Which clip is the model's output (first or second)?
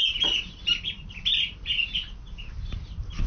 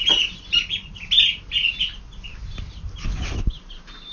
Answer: first